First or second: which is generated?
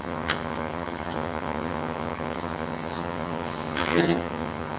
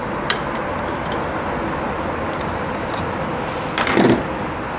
first